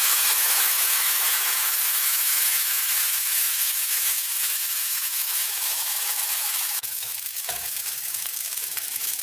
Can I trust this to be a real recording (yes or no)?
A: no